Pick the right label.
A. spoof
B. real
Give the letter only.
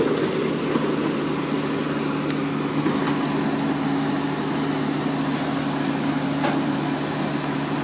B